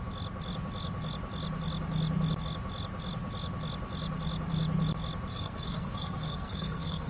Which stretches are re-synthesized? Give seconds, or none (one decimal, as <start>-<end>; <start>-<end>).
5.3-7.1